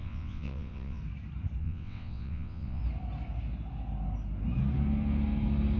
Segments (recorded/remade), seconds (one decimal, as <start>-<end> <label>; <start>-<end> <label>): 0.0-1.0 remade; 1.0-1.6 recorded; 1.6-2.8 remade; 2.8-5.8 recorded